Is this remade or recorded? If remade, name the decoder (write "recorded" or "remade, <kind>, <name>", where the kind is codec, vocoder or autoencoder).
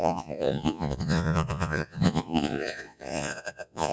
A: remade, vocoder, Vocos